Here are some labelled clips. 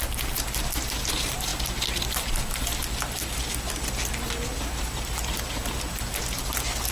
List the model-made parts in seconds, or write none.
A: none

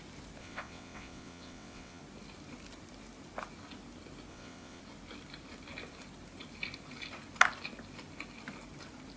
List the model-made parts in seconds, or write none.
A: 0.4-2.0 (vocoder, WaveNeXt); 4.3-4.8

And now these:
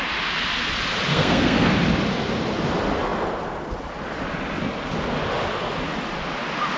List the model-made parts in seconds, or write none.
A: 1.1-1.7 (codec, SNAC)